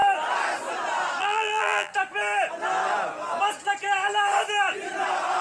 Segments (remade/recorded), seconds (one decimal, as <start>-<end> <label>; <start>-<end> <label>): 0.0-1.2 recorded; 1.2-1.9 remade; 1.9-5.4 recorded